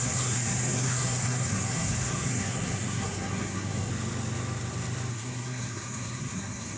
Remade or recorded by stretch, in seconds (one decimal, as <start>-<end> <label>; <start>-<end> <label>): 0.0-3.9 remade; 3.9-5.1 recorded; 5.1-6.8 remade